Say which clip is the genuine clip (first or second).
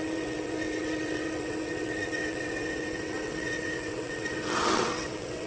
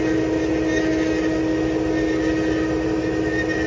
second